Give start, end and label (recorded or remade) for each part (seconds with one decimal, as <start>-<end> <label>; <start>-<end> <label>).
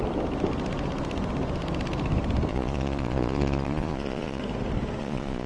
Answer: 0.0-2.5 recorded; 2.5-4.4 remade; 4.4-5.0 recorded; 5.0-5.5 remade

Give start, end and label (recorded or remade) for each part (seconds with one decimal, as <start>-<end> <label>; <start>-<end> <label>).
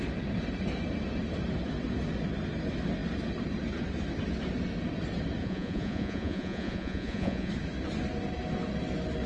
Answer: 0.0-5.4 recorded; 5.4-7.5 remade; 7.5-9.3 recorded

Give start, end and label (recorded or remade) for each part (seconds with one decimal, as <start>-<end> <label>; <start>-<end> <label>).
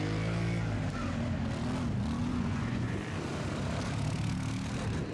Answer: 0.0-2.2 recorded; 2.2-3.0 remade; 3.0-5.1 recorded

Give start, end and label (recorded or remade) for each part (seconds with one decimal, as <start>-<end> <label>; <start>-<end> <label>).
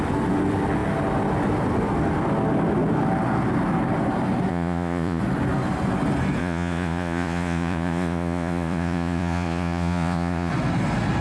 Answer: 0.0-4.5 recorded; 4.5-5.2 remade; 5.2-6.4 recorded; 6.4-10.5 remade; 10.5-11.2 recorded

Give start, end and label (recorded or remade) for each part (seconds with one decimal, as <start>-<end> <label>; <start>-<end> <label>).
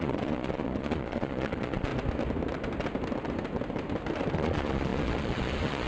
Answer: 0.0-1.9 remade; 1.9-4.3 recorded; 4.3-5.9 remade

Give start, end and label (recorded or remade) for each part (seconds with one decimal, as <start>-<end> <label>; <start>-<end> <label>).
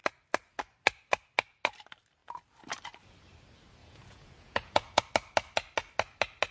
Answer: 0.0-3.8 recorded; 3.8-5.0 remade; 5.0-6.5 recorded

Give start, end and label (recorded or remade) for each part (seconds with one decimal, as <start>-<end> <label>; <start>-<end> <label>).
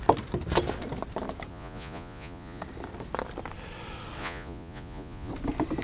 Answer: 0.0-1.5 recorded; 1.5-2.6 remade; 2.6-4.2 recorded; 4.2-5.3 remade; 5.3-5.8 recorded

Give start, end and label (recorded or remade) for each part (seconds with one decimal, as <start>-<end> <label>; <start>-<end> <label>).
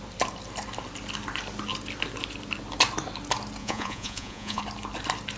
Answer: 0.0-3.6 recorded; 3.6-4.6 remade; 4.6-5.4 recorded